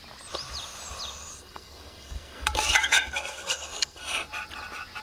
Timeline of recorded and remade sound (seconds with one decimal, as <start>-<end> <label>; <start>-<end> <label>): 0.0-1.3 recorded; 1.3-4.3 remade; 4.3-5.0 recorded